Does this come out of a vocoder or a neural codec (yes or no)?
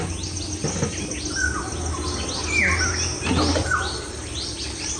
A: no